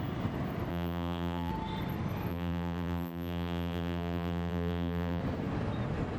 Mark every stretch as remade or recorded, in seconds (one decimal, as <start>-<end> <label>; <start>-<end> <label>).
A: 0.0-0.7 recorded; 0.7-1.5 remade; 1.5-2.3 recorded; 2.3-5.2 remade; 5.2-6.2 recorded